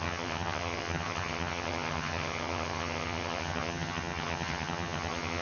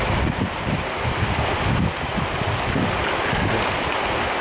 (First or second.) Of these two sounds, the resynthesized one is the first